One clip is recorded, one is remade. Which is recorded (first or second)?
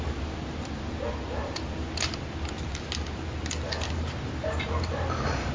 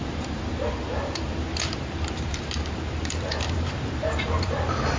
first